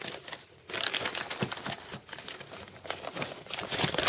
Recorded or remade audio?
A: recorded